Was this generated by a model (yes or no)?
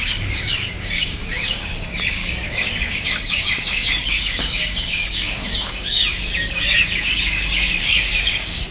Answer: yes